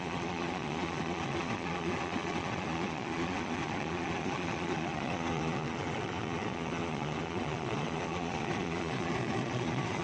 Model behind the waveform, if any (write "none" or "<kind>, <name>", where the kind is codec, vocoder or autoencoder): vocoder, Vocos